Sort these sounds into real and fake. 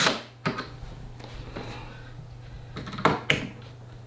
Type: real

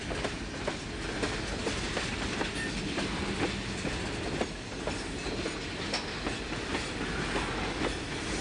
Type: real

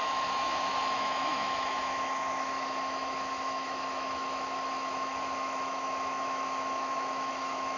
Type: fake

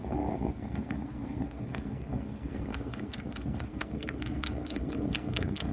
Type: fake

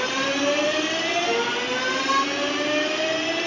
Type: real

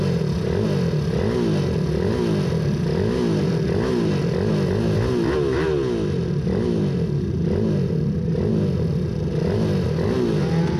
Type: real